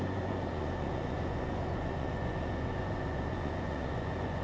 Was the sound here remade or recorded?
remade